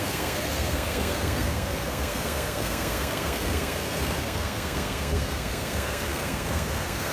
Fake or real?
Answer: fake